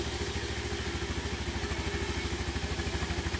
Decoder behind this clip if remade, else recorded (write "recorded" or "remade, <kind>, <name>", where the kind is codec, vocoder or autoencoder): recorded